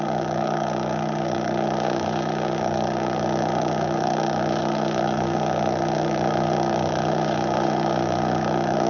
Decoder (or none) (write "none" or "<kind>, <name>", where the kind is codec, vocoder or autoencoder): codec, SNAC